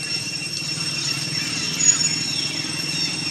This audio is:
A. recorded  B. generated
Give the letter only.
B